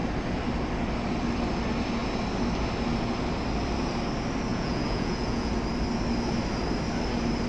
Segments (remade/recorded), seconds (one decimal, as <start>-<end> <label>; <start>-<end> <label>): 0.0-4.5 recorded; 4.5-5.5 remade; 5.5-7.5 recorded